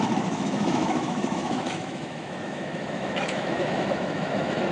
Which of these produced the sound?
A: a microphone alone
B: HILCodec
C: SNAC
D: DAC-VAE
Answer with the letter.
D